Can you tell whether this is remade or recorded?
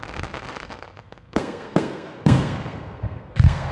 remade